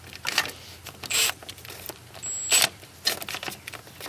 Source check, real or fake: real